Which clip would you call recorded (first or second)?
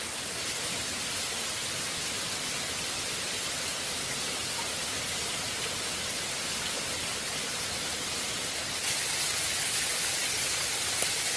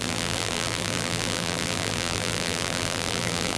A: first